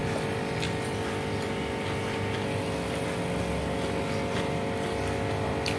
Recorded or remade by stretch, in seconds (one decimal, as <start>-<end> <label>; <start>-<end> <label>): 0.0-5.8 recorded